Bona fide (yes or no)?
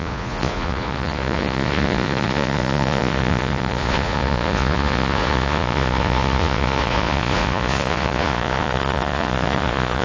no